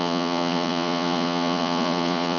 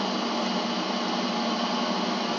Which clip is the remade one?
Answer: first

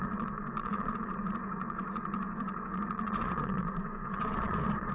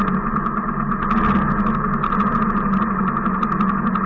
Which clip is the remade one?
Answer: first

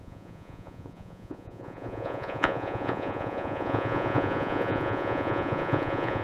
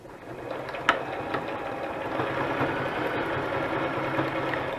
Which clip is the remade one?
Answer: first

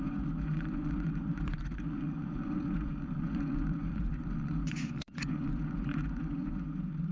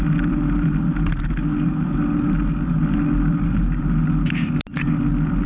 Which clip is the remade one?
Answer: first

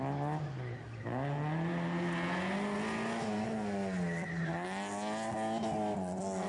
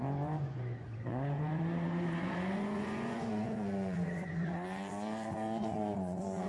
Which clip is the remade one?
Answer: second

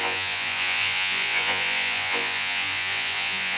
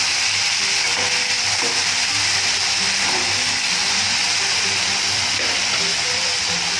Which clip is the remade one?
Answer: first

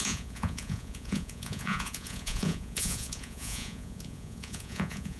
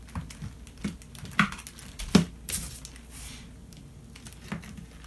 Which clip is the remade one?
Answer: first